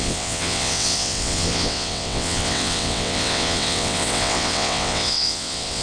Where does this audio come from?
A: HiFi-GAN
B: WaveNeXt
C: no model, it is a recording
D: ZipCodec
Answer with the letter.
B